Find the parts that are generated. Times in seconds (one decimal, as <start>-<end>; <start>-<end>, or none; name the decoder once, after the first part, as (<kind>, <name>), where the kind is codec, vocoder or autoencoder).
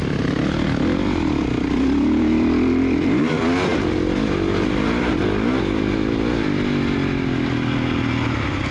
none